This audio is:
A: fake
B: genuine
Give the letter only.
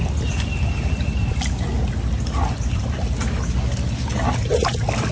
B